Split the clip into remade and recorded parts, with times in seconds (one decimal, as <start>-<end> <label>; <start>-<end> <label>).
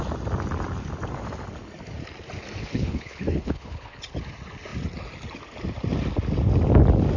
0.0-2.6 recorded; 2.6-4.0 remade; 4.0-7.2 recorded